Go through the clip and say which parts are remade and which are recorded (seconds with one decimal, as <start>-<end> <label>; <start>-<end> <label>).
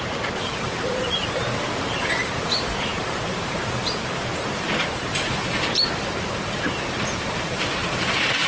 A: 0.0-8.5 remade